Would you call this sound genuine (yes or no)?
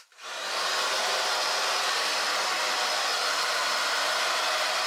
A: yes